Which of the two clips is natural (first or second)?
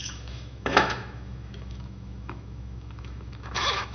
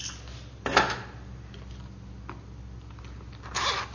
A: second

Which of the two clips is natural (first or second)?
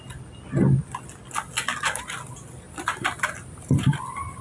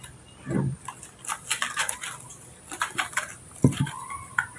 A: first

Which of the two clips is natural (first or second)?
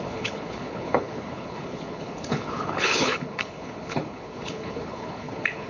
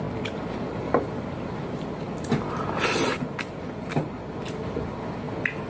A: second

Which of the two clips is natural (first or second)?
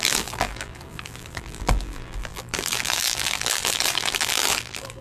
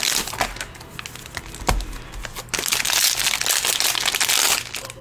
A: second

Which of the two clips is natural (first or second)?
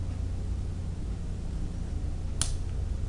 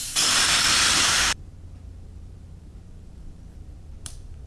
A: first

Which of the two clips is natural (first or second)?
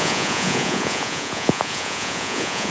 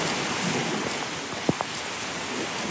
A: second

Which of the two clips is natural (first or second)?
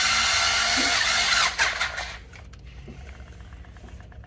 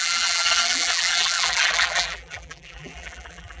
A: first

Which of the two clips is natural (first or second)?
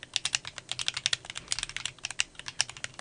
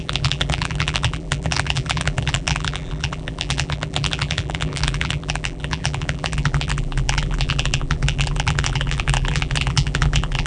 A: first